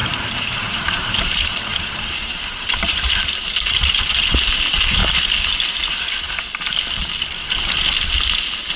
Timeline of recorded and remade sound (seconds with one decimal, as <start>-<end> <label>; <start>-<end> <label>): 0.0-2.7 remade; 2.7-8.8 recorded